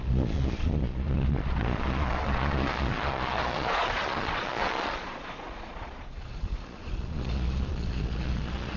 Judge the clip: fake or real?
fake